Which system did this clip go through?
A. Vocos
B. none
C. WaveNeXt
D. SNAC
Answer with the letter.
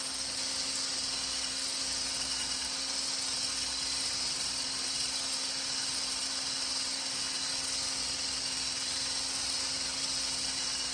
B